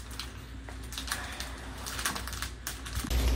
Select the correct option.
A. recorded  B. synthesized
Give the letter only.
A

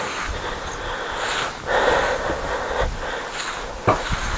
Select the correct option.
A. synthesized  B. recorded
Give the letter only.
B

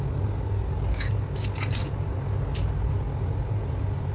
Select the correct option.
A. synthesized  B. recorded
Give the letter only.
B